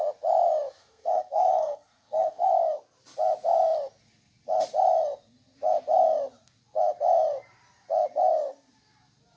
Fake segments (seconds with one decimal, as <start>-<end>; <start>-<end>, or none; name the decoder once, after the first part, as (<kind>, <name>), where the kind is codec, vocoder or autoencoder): 0.8-2.5 (codec, SNAC)